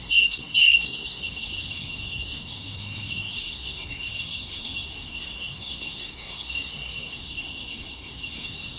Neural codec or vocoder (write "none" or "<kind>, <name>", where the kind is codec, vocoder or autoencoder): codec, SNAC